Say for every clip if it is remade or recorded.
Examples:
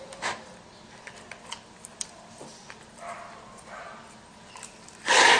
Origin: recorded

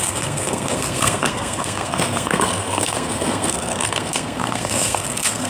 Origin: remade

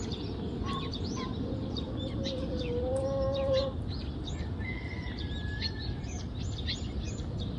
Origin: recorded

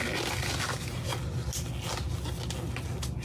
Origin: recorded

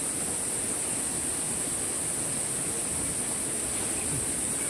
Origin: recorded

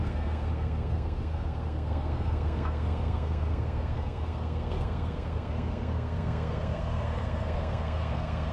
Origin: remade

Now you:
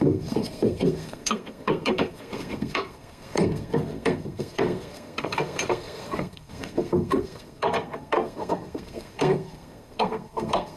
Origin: remade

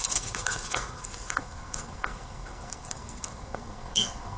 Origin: remade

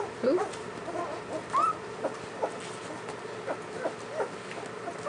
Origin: recorded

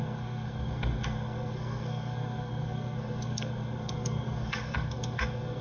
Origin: remade